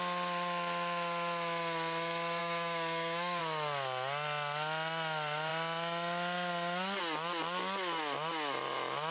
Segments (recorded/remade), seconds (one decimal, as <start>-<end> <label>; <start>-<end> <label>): 0.0-2.4 recorded; 2.4-3.4 remade; 3.4-9.1 recorded

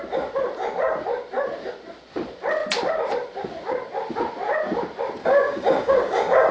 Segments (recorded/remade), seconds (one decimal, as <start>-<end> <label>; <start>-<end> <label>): 0.0-5.2 recorded; 5.2-6.5 remade

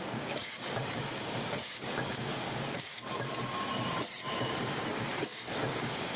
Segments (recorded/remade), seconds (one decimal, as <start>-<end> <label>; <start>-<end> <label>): 0.0-3.0 remade; 3.0-4.4 recorded; 4.4-6.2 remade

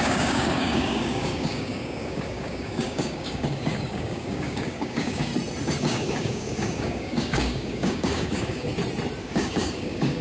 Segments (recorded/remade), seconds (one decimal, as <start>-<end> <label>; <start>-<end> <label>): 0.0-5.3 remade; 5.3-5.8 recorded; 5.8-8.7 remade; 8.7-9.2 recorded; 9.2-10.2 remade

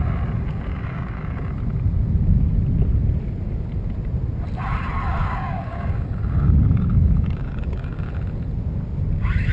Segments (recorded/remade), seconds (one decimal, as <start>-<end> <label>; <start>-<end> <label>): 0.0-0.7 recorded; 0.7-1.5 remade; 1.5-5.2 recorded; 5.2-8.1 remade; 8.1-9.5 recorded

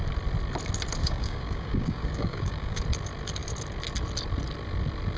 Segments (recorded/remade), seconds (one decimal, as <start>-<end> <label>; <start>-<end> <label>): 0.0-1.0 recorded; 1.0-2.8 remade; 2.8-5.2 recorded

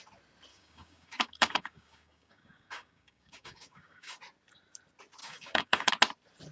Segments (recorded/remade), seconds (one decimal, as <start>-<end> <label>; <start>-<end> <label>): 0.0-0.5 recorded; 0.5-4.2 remade; 4.2-5.2 recorded; 5.2-5.9 remade; 5.9-6.5 recorded

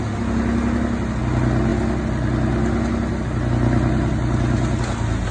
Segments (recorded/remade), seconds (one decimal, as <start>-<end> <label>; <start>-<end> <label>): 0.0-5.3 recorded